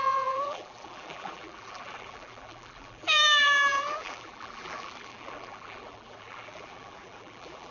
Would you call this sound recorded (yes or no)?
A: no